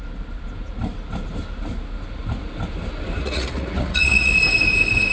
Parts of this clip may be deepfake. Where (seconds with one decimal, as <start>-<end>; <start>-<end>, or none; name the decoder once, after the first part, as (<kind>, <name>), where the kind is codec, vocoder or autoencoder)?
3.2-4.3 (vocoder, Vocos)